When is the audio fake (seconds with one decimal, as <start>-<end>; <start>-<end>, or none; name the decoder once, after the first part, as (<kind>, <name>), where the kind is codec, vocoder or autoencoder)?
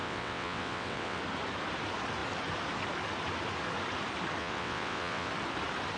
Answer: 0.0-1.2 (vocoder, WaveNeXt); 4.4-5.3